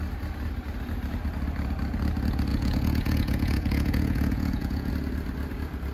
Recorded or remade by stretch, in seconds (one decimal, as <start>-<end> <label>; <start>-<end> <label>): 0.0-2.5 recorded; 2.5-4.9 remade; 4.9-5.9 recorded